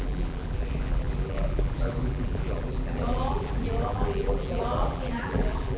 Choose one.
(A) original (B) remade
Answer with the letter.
B